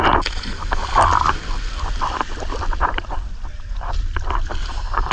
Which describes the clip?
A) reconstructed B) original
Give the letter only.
B